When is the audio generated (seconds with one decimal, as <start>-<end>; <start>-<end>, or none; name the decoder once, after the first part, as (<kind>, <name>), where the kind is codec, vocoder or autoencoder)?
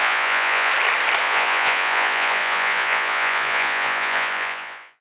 0.0-0.7 (vocoder, Vocos); 1.2-5.0